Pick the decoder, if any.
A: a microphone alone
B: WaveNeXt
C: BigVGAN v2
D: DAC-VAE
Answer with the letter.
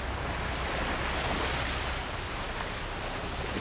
A